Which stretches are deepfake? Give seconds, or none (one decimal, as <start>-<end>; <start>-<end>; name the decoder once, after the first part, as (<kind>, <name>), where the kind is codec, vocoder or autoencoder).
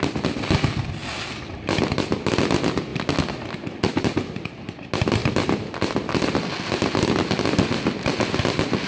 none